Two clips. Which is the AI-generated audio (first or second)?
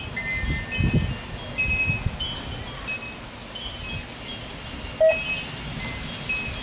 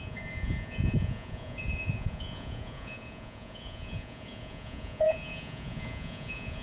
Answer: second